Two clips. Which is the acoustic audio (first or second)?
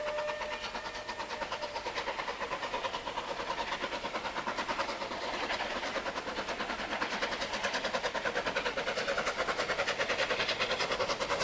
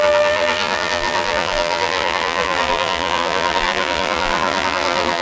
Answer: first